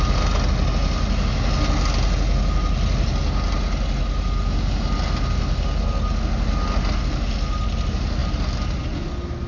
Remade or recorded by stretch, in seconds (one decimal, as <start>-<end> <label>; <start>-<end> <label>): 0.0-9.5 recorded